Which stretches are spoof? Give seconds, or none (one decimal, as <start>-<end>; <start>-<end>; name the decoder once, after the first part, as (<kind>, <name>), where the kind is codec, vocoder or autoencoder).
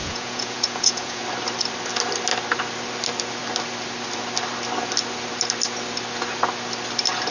0.0-1.2 (vocoder, Vocos)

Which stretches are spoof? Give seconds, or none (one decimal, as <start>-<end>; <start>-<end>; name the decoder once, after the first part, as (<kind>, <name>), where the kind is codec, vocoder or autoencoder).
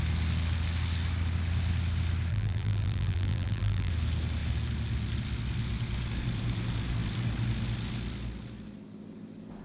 2.3-3.9 (vocoder, BigVGAN v2)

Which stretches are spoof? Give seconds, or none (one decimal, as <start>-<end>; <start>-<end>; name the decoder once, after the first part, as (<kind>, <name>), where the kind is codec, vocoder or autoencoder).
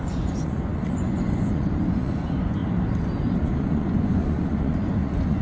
0.0-2.6 (vocoder, Vocos); 3.4-5.4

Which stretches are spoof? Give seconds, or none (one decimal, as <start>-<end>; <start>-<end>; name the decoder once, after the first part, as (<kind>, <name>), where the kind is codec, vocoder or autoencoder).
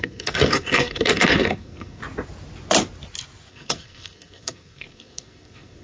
0.0-2.0 (codec, SNAC); 3.5-5.8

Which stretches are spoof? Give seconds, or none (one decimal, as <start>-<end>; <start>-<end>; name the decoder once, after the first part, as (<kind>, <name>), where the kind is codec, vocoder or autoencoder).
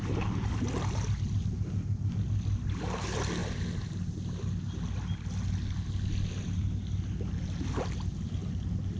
none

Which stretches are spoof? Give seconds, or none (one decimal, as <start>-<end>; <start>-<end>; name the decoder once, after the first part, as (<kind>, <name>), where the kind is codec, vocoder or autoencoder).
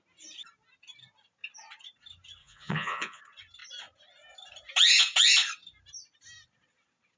2.4-3.2 (vocoder, Vocos)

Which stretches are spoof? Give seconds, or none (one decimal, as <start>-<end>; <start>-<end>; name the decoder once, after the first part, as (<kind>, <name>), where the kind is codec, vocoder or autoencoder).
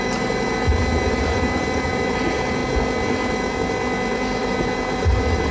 0.0-2.6 (vocoder, BigVGAN v2); 4.4-5.5